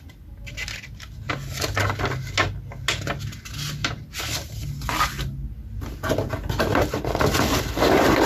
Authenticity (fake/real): real